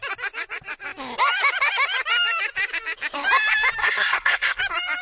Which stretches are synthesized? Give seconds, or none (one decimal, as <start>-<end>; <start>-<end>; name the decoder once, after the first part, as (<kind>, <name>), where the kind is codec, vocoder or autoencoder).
3.8-4.6 (codec, SNAC)